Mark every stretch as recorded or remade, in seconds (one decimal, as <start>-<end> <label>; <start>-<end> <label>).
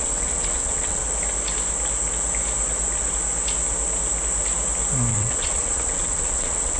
0.0-1.0 remade; 1.0-5.1 recorded; 5.1-6.8 remade